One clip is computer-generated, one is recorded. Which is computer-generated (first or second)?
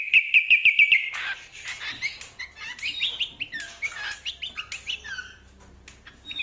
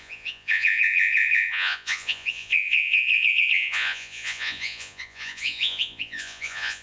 second